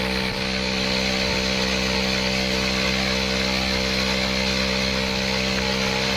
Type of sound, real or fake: real